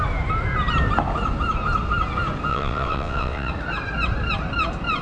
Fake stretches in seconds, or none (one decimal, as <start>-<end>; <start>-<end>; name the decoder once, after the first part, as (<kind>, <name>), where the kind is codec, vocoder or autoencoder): 2.5-3.5 (vocoder, WaveNeXt)

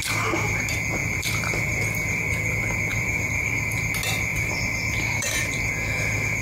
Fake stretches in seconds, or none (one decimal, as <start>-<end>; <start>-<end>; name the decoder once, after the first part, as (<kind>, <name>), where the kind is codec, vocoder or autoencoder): 1.0-2.2 (vocoder, BigVGAN v2); 2.9-3.5; 4.3-5.7

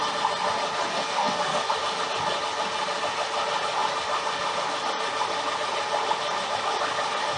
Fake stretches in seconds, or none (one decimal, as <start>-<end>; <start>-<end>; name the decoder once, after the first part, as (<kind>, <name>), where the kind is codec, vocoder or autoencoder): 0.9-1.7 (codec, SNAC)

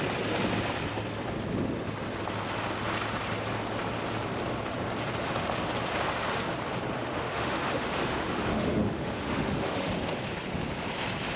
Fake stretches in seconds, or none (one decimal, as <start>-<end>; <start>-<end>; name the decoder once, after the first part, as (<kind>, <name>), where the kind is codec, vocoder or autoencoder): 7.0-9.9 (autoencoder, DAC-VAE)

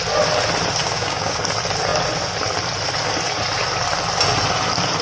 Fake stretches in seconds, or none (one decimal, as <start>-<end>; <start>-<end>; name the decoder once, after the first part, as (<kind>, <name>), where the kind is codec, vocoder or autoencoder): 0.8-1.4 (codec, DAC)